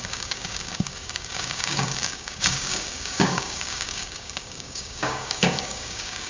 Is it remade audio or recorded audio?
remade